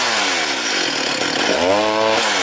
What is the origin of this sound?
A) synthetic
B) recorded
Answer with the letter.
B